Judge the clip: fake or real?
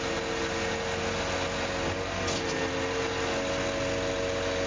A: real